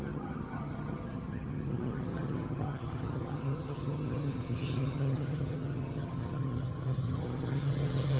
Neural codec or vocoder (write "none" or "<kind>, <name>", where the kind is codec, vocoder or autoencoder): vocoder, HiFi-GAN